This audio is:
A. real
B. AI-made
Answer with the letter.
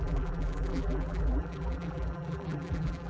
B